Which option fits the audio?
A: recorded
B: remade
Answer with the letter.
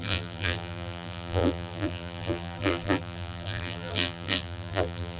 B